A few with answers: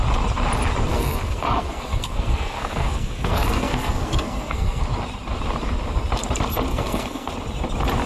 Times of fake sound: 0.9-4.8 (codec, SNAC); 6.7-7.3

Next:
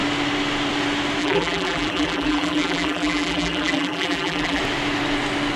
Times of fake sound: 1.2-4.6 (vocoder, BigVGAN v2)

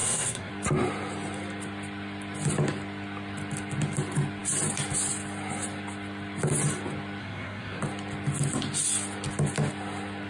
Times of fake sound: 0.0-0.5 (codec, SNAC); 7.2-7.8

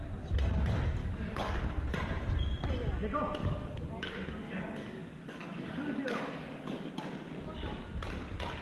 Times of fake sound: 1.0-1.6 (codec, DAC); 3.4-6.9

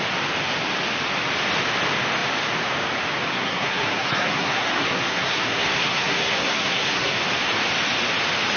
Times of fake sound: 3.3-7.1 (codec, SNAC)

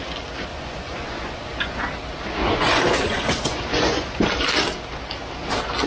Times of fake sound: 0.5-1.8 (vocoder, Vocos); 2.4-4.2

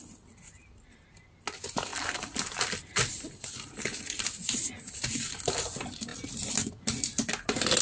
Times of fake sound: none

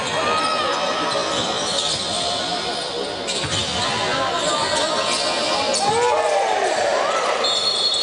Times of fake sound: 0.0-3.6 (vocoder, BigVGAN v2); 4.6-6.9; 7.6-8.0